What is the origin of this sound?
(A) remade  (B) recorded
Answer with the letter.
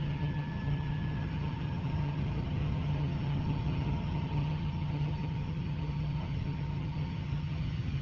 A